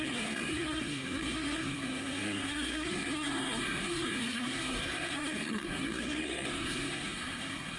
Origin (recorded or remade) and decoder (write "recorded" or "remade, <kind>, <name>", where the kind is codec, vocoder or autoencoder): remade, codec, SNAC